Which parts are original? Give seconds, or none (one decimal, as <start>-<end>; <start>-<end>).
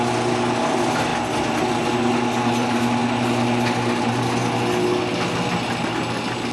0.0-6.5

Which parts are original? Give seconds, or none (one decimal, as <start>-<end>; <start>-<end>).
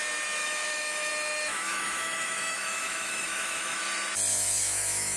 0.0-0.4; 1.1-1.5; 3.8-4.3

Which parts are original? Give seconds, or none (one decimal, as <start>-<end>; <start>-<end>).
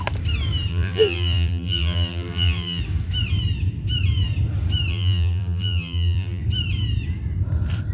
0.0-0.7; 2.8-4.9; 6.4-7.9